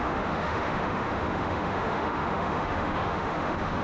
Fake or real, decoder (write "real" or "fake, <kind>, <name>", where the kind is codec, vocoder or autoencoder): fake, autoencoder, DAC-VAE